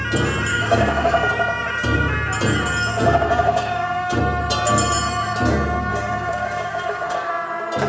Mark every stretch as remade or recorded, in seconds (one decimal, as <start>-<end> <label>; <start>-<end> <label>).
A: 0.0-0.5 recorded; 0.5-1.3 remade; 1.3-2.9 recorded; 2.9-4.2 remade; 4.2-5.9 recorded; 5.9-7.3 remade; 7.3-7.9 recorded